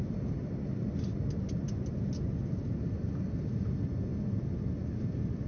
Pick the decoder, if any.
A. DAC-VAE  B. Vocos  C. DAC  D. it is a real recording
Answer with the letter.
D